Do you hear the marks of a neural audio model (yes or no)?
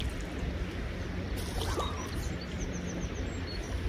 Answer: no